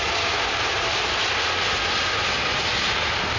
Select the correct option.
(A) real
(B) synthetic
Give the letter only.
A